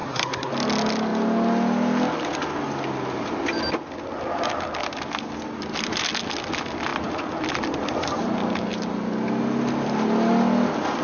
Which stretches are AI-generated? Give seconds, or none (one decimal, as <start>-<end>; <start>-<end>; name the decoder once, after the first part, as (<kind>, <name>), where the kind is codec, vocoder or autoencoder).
0.0-0.5 (codec, SNAC)